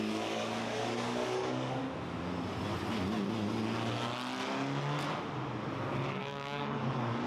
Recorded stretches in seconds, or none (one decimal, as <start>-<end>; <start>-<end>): 1.8-6.2